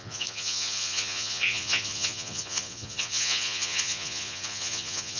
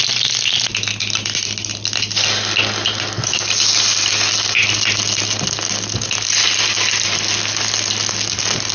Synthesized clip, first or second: first